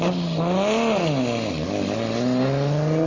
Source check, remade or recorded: recorded